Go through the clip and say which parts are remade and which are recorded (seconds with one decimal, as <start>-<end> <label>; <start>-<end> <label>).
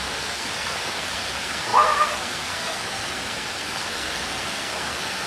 0.0-5.3 remade